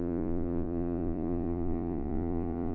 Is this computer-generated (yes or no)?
yes